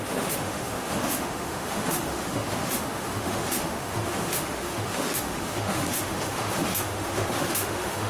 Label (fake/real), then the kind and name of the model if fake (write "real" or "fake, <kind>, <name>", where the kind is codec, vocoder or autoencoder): fake, autoencoder, DAC-VAE